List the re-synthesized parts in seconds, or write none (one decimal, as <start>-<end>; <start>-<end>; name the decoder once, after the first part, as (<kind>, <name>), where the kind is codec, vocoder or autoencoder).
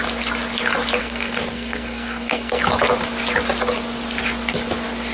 1.0-2.6 (codec, SNAC)